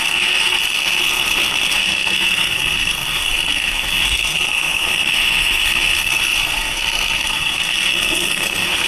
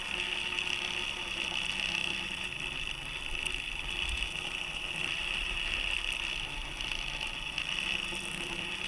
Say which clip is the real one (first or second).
second